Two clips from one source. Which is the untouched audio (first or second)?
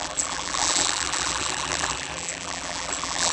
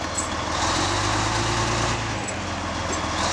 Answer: second